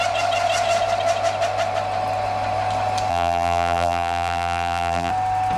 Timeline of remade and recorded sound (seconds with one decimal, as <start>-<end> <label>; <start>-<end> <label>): 0.0-3.1 recorded; 3.1-5.1 remade; 5.1-5.6 recorded